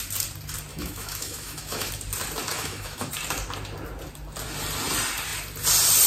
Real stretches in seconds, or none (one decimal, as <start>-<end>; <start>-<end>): 0.0-0.7; 1.9-2.5; 3.1-6.1